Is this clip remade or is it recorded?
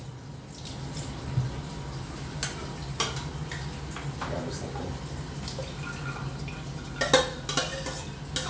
recorded